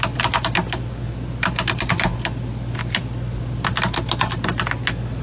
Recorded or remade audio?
recorded